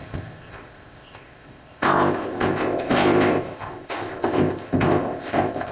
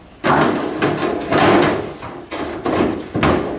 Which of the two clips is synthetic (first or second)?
first